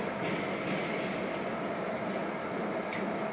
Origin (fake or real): real